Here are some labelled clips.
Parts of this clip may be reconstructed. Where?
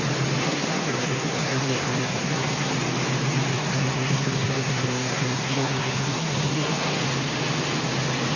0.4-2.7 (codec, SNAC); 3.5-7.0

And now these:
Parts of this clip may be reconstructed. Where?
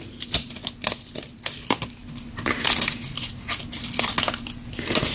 none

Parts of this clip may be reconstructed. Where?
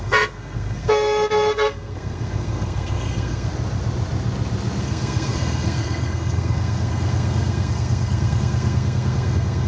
0.0-3.5 (codec, SNAC); 4.8-9.7